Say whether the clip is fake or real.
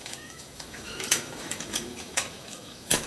fake